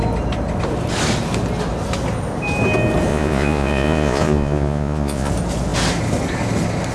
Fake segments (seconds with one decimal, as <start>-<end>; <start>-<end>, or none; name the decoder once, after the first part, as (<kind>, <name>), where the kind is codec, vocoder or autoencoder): 3.1-5.3 (vocoder, Vocos)